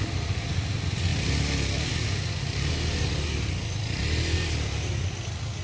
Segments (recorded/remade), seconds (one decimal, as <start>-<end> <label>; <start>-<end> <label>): 0.0-5.6 recorded